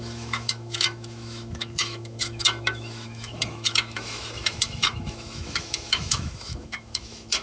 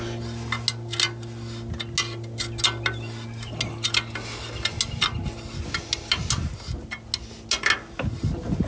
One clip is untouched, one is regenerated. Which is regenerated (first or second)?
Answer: first